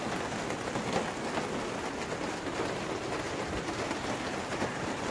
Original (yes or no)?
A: yes